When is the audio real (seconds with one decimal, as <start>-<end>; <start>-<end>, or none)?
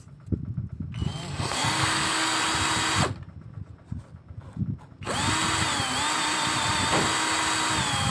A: 0.0-1.3; 2.4-8.1